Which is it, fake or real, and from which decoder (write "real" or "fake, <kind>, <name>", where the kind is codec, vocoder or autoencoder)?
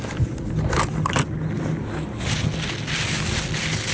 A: real